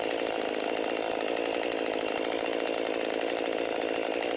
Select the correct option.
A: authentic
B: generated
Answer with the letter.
A